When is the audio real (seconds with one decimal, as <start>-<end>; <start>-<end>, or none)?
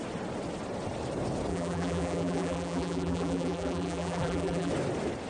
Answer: 0.0-1.5; 4.7-5.3